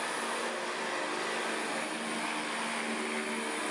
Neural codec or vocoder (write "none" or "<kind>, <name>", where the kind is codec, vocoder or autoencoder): none